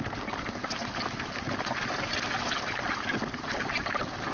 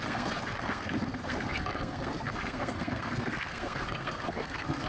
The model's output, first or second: second